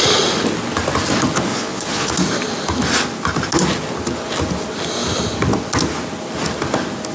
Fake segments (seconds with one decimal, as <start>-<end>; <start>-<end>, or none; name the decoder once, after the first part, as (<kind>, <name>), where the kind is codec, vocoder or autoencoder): 1.5-2.1 (vocoder, Vocos)